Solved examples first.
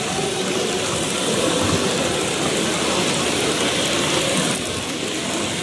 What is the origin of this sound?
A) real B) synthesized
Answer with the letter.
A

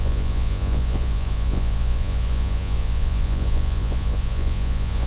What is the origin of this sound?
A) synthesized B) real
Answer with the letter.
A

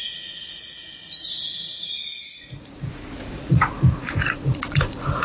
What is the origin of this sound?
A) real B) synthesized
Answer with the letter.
B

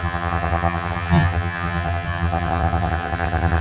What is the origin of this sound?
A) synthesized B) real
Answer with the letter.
A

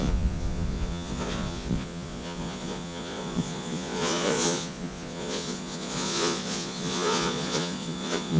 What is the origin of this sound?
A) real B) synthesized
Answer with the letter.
B